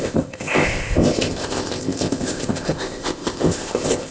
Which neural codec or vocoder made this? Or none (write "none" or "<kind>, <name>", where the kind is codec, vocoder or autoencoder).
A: codec, ZipCodec